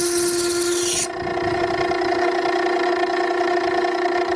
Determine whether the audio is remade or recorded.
recorded